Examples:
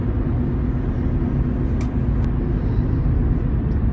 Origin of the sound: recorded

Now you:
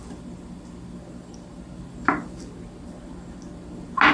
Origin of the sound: recorded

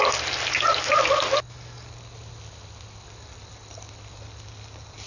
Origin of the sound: recorded